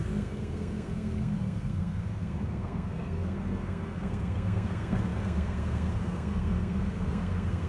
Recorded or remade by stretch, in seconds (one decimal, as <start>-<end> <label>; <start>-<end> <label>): 0.0-7.7 remade